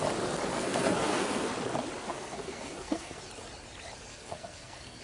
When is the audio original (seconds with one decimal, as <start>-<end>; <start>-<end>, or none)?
0.0-0.5; 1.5-2.0; 3.2-4.1